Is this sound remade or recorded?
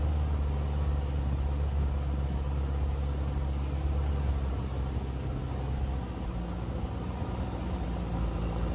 recorded